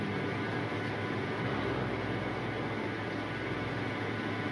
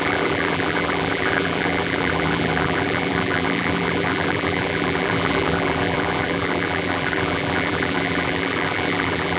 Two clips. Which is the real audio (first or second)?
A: first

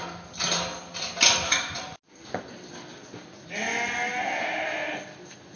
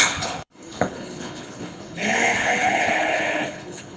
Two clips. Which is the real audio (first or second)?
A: first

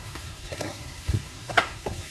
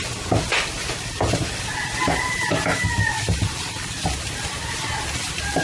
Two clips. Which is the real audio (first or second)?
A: second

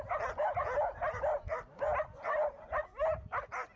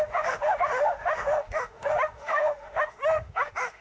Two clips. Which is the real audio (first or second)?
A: first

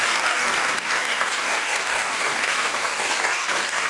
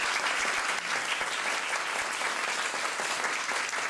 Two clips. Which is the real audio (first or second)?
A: second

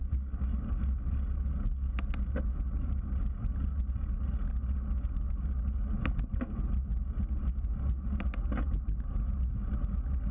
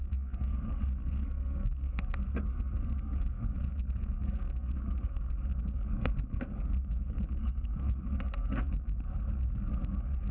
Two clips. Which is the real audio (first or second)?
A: first